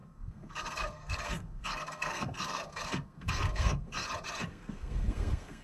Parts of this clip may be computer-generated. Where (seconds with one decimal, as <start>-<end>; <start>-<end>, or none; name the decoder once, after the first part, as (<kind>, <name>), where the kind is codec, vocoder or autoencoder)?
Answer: 0.0-4.0 (codec, SNAC); 4.5-5.6